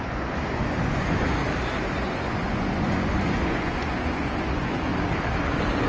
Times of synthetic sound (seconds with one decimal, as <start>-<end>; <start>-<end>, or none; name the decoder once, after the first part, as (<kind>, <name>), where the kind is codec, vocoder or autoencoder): 0.0-1.4 (vocoder, Vocos); 2.0-4.9